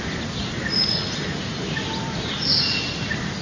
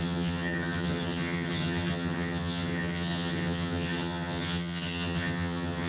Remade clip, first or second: second